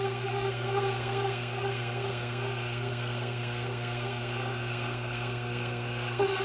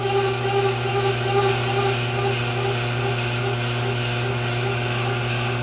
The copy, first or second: first